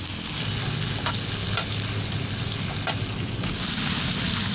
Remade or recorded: recorded